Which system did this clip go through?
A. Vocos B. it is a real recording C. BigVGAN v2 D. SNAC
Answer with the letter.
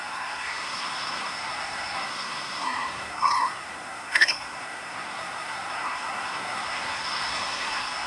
D